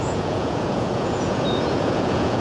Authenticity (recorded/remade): remade